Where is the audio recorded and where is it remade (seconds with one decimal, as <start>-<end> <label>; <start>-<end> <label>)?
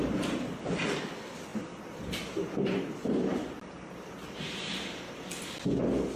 0.0-6.2 recorded